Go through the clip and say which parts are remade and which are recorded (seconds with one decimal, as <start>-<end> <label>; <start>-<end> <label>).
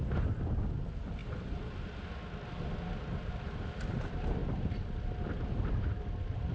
0.0-6.5 recorded